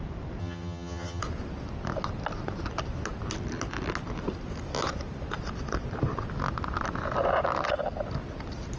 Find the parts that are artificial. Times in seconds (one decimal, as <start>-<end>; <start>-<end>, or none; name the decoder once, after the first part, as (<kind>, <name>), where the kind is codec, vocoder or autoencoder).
0.4-1.2 (vocoder, HiFi-GAN)